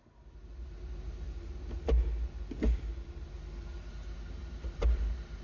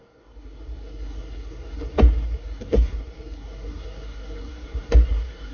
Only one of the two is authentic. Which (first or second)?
first